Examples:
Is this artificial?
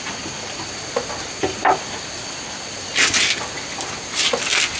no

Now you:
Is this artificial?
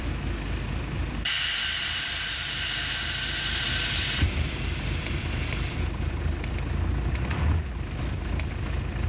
yes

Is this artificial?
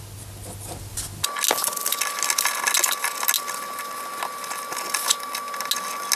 no